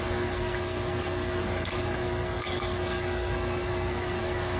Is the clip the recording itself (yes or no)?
no